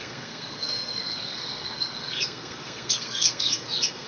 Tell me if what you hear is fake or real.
fake